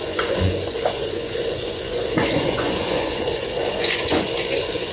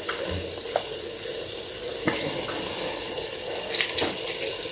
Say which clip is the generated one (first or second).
first